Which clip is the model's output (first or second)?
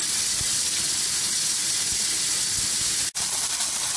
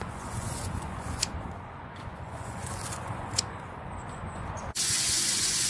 second